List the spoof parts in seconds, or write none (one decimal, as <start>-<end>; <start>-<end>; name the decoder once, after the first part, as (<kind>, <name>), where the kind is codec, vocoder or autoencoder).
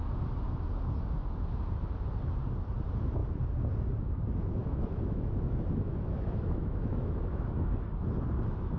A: 4.6-7.9 (autoencoder, DAC-VAE)